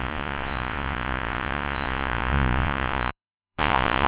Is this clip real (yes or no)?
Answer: no